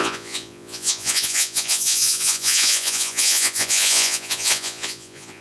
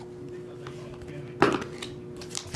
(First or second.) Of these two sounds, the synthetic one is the first